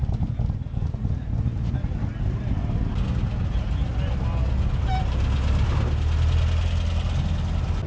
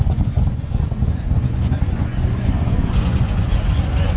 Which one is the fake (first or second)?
second